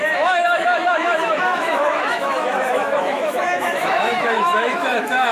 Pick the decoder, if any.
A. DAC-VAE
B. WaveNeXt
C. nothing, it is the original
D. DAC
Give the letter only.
A